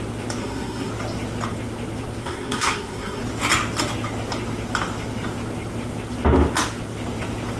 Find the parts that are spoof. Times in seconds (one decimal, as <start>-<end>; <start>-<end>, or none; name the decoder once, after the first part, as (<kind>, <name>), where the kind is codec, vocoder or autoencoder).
0.4-0.9 (codec, SNAC); 2.2-3.2